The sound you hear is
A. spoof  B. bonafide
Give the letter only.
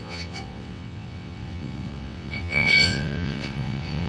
A